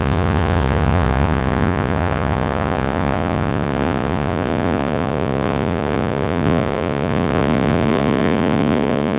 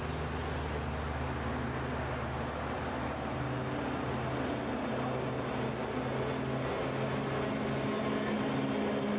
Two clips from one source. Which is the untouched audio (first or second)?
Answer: second